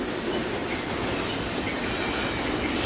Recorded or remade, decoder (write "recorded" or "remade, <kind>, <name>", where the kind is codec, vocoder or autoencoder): recorded